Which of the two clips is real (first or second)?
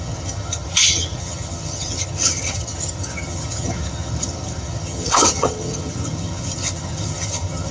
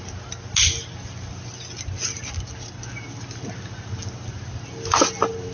second